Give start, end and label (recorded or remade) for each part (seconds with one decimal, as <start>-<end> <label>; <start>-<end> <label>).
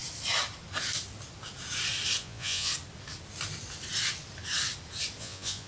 0.0-2.2 recorded; 2.2-2.7 remade; 2.7-5.2 recorded; 5.2-5.7 remade